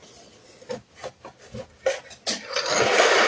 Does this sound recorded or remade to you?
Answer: recorded